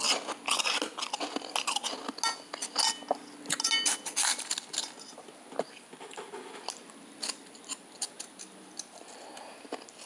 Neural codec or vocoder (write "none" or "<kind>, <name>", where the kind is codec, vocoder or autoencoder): none